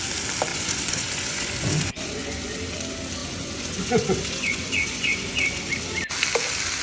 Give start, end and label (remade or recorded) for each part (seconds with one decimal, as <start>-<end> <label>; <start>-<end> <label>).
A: 0.0-0.5 recorded; 0.5-2.5 remade; 2.5-3.2 recorded; 3.2-5.6 remade; 5.6-6.8 recorded